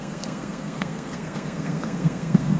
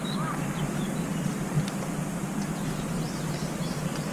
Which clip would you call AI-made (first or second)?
first